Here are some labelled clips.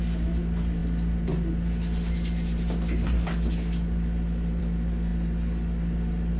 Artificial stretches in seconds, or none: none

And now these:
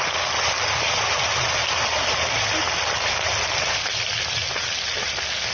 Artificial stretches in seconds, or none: none

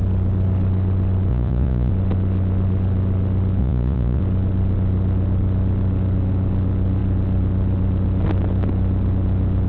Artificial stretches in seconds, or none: 1.3-1.9; 3.6-4.2